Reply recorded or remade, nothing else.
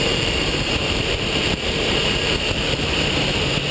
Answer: remade